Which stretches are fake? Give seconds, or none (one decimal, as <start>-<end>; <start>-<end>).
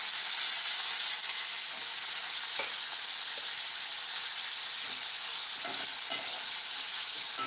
none